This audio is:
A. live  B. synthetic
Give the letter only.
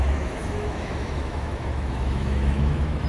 B